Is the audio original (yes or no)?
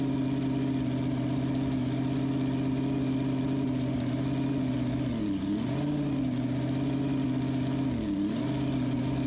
yes